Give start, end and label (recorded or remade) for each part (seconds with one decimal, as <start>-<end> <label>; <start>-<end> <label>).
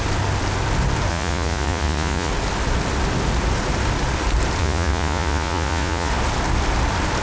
0.0-1.1 recorded; 1.1-2.3 remade; 2.3-4.6 recorded; 4.6-6.1 remade; 6.1-7.2 recorded